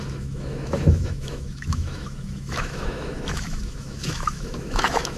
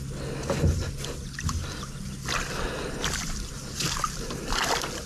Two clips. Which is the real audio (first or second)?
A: second